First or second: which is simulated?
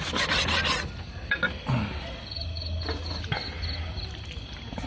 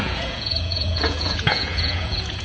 second